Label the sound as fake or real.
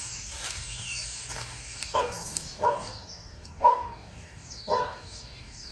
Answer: fake